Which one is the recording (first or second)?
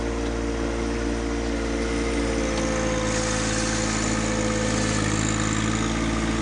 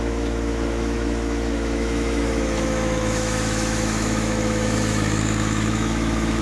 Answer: first